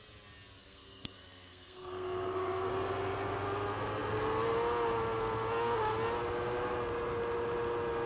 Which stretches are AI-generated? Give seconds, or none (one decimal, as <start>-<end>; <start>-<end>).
0.6-2.7